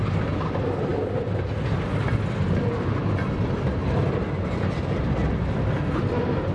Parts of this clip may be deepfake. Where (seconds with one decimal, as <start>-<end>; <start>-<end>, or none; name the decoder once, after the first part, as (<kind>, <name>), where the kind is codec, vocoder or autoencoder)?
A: none